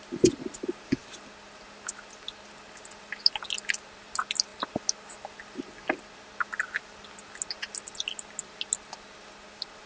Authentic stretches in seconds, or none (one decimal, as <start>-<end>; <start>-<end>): 0.0-9.9